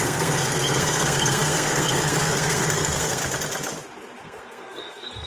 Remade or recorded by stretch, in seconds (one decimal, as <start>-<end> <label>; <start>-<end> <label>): 0.0-3.2 remade; 3.2-4.2 recorded; 4.2-5.3 remade